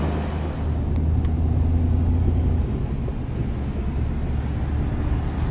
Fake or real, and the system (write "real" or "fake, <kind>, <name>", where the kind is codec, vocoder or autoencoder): real